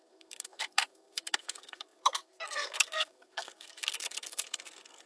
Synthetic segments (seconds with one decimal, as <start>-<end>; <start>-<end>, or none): 0.0-5.1